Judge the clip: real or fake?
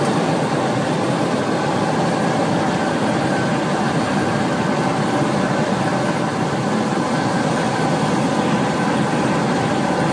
fake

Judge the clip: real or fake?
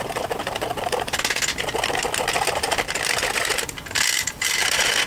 real